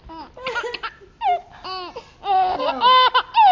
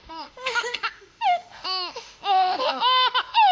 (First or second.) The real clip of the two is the first